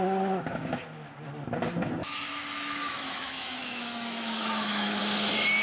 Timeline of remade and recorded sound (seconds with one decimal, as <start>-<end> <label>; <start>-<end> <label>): 0.0-2.0 recorded; 2.0-5.0 remade; 5.0-5.6 recorded